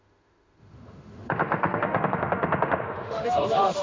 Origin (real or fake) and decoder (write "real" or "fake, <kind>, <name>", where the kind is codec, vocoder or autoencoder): fake, autoencoder, DAC-VAE